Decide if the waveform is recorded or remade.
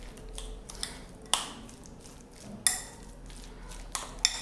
recorded